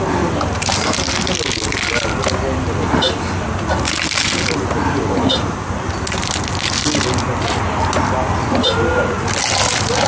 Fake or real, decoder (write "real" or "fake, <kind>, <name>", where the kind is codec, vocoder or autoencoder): real